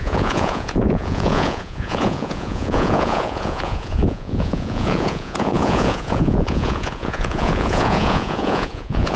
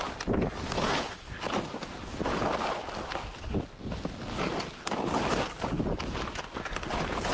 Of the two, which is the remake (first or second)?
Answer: first